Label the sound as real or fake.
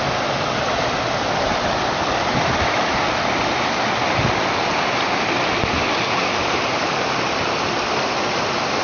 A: real